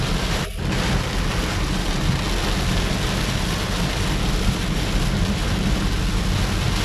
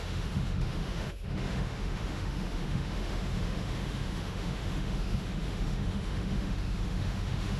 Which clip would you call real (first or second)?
first